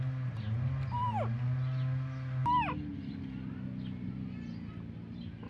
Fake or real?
real